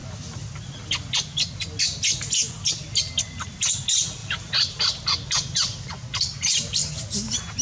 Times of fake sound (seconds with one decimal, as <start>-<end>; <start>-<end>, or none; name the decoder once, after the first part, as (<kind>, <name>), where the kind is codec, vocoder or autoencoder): none